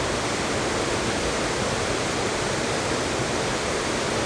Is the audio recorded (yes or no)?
no